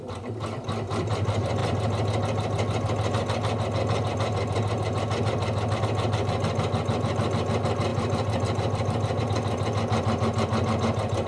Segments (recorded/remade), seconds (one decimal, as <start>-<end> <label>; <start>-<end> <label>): 0.0-11.3 recorded